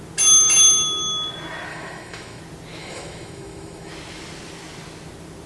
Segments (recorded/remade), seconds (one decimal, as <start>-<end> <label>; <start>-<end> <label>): 0.0-1.7 recorded; 1.7-2.4 remade; 2.4-2.8 recorded; 2.8-3.9 remade; 3.9-5.5 recorded